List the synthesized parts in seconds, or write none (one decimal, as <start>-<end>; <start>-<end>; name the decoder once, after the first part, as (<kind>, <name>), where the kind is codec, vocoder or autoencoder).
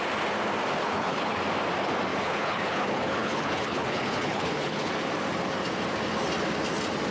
0.8-1.4 (codec, HILCodec); 2.1-4.9